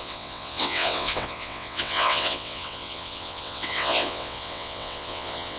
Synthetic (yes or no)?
yes